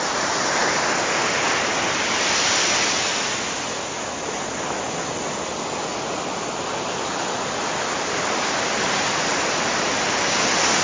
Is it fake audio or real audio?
real